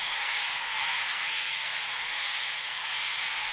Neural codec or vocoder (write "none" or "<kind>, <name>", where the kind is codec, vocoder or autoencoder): codec, SNAC